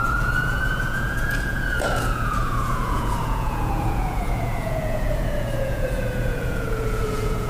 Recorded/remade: remade